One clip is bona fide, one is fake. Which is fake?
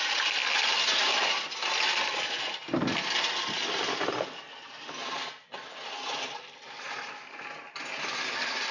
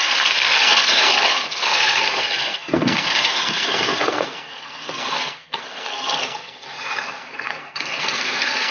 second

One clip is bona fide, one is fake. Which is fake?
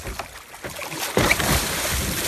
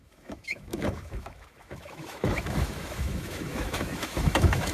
second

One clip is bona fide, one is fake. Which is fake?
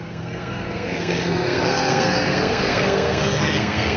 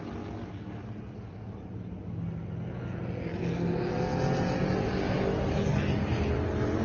first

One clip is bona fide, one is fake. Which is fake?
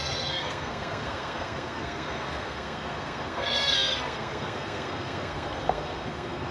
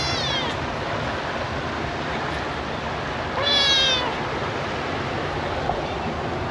first